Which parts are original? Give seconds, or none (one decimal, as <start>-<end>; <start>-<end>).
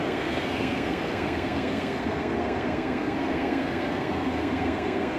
none